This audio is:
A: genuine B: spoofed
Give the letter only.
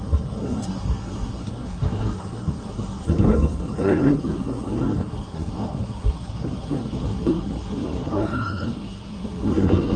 B